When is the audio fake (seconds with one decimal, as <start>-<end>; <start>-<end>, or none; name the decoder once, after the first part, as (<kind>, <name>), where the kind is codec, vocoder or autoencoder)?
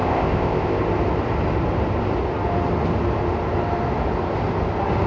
0.0-0.8 (codec, ZipCodec)